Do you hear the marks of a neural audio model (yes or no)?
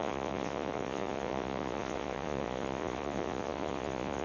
yes